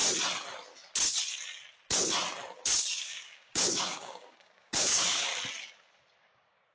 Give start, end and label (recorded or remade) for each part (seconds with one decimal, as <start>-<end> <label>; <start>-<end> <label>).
0.0-3.0 recorded; 3.0-5.3 remade; 5.3-6.2 recorded; 6.2-6.7 remade